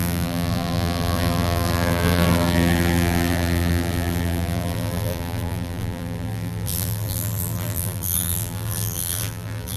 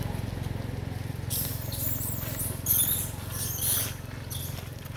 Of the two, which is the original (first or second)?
second